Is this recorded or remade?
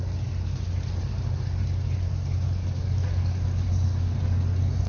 recorded